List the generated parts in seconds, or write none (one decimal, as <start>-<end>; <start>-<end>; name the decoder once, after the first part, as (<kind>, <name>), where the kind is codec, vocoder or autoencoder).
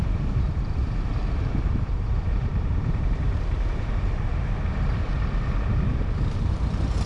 0.0-7.1 (vocoder, BigVGAN v2)